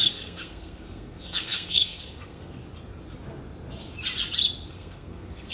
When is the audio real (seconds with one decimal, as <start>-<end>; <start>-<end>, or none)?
2.6-4.7